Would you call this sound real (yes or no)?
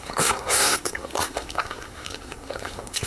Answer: no